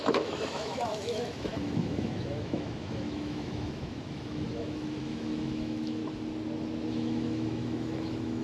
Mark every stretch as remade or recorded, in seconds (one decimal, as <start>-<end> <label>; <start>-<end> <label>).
0.0-6.0 remade; 6.0-6.9 recorded; 6.9-8.4 remade